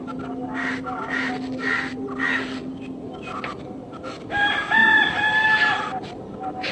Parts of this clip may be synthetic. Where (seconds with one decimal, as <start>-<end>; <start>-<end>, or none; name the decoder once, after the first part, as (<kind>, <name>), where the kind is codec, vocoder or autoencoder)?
0.6-1.3 (autoencoder, DAC-VAE)